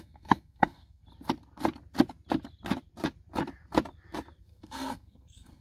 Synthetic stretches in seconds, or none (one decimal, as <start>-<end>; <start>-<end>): 0.0-1.0; 4.4-5.6